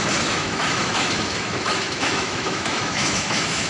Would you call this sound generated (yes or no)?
yes